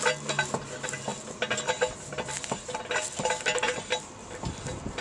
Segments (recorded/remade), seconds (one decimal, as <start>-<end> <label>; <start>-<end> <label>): 0.0-5.0 recorded